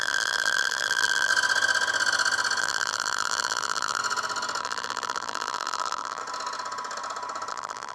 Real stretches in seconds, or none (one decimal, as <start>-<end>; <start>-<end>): 1.3-2.6; 4.0-4.6; 6.2-7.5